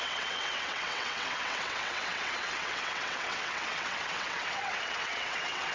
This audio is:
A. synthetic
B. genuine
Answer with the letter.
A